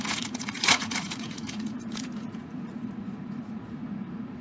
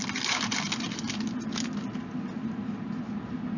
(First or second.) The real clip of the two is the second